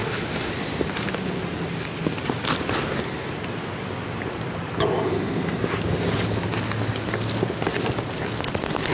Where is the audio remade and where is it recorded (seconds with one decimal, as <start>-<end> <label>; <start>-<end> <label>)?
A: 0.0-0.5 remade; 0.5-8.9 recorded

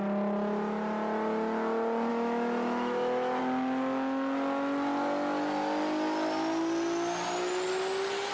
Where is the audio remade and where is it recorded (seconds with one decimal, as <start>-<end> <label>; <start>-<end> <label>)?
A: 0.0-2.1 recorded; 2.1-3.4 remade; 3.4-8.3 recorded

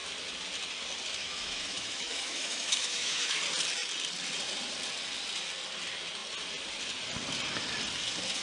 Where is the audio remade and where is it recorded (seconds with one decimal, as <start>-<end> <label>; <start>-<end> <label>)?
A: 0.0-1.2 recorded; 1.2-3.4 remade; 3.4-8.4 recorded

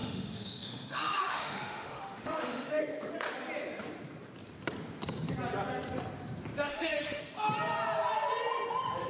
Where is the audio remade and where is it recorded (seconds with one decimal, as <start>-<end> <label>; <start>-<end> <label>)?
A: 0.0-2.8 remade; 2.8-6.7 recorded; 6.7-7.2 remade; 7.2-9.1 recorded

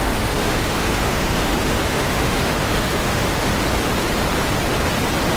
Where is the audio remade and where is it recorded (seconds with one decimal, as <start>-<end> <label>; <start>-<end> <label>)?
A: 0.0-3.5 remade; 3.5-5.4 recorded